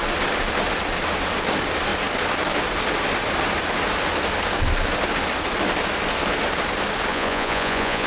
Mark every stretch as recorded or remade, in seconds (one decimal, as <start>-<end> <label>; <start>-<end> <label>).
0.0-7.1 recorded; 7.1-8.1 remade